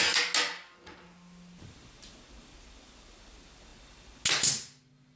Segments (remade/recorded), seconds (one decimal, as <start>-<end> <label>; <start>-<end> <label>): 0.0-5.2 recorded